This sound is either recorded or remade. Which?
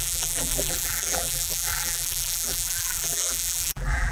remade